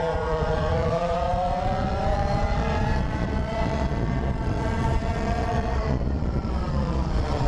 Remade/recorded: remade